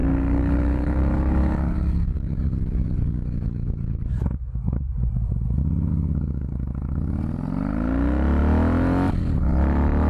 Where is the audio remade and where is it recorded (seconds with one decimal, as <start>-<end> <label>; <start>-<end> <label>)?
0.0-4.9 remade; 4.9-5.9 recorded; 5.9-6.5 remade; 6.5-10.1 recorded